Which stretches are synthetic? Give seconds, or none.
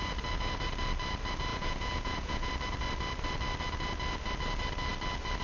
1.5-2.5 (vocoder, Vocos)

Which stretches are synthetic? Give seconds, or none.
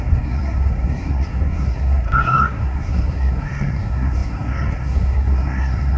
0.0-6.0 (codec, SNAC)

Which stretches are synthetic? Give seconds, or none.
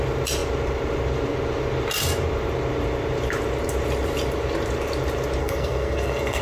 5.4-6.4 (codec, SNAC)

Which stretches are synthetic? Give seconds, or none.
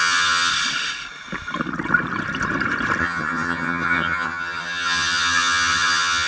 0.0-0.5 (vocoder, HiFi-GAN); 3.0-6.3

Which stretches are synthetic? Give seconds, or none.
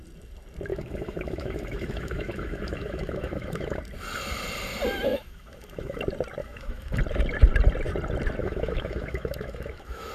0.7-3.8 (autoencoder, DAC-VAE); 5.1-6.0; 6.4-7.0; 8.4-10.1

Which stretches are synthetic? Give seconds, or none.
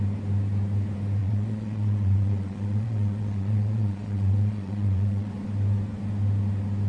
1.2-5.3 (vocoder, Vocos)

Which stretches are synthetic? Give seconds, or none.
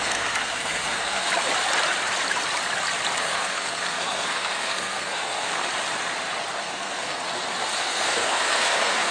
0.0-1.3 (codec, SNAC); 3.2-5.7; 6.6-7.2; 7.8-9.1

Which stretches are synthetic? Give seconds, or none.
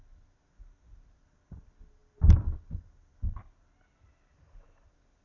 none